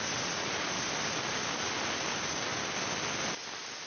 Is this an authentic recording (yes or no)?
yes